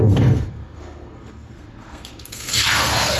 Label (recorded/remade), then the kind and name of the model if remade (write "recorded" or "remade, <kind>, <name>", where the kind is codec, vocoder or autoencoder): remade, codec, SNAC